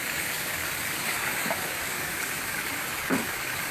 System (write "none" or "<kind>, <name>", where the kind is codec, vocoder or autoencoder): codec, DAC